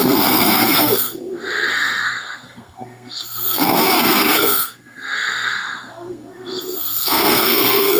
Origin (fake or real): fake